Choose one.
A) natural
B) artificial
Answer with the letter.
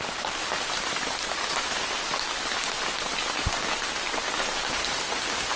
A